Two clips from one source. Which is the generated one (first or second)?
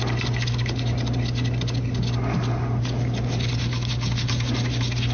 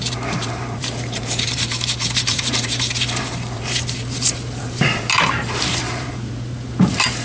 second